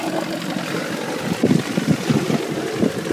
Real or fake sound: real